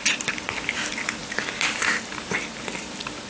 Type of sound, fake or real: real